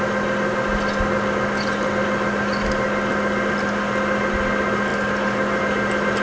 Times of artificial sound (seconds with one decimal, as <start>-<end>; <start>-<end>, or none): none